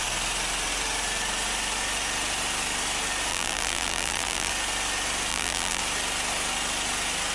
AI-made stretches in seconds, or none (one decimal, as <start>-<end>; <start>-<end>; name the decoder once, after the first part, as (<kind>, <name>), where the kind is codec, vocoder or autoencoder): 3.3-4.5 (vocoder, BigVGAN v2); 5.3-5.8